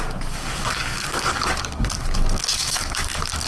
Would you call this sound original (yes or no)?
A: no